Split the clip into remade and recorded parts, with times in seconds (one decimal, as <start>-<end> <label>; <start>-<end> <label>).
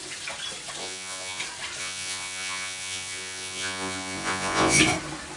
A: 0.0-0.8 recorded; 0.8-1.4 remade; 1.4-1.8 recorded; 1.8-4.8 remade; 4.8-5.4 recorded